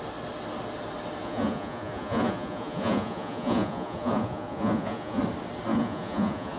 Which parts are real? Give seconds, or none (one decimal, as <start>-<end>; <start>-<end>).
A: 0.0-1.2; 5.2-5.7

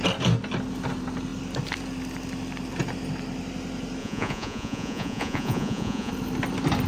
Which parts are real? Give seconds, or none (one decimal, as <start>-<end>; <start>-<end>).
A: 0.0-4.0; 6.1-6.9

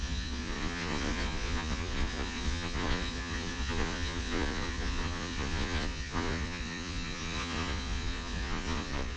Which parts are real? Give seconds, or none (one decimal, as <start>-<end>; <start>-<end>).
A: none

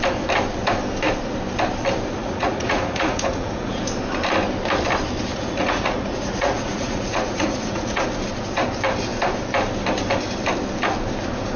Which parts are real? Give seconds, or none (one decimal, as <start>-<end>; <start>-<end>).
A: 0.0-2.2; 3.8-5.3; 8.0-11.6

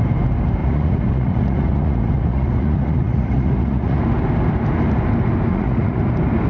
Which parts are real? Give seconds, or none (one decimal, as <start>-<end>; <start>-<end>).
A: 0.0-0.6; 4.0-5.5; 6.0-6.5

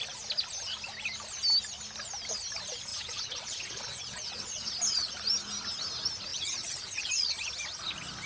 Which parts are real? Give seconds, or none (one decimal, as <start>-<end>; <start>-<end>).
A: 0.0-2.9; 4.7-6.3; 7.1-8.3

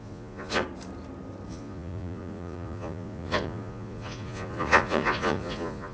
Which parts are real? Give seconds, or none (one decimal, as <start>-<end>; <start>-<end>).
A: 0.6-1.5